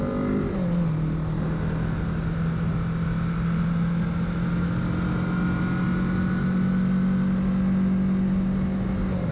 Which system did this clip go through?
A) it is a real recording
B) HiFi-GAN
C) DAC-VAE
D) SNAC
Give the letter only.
A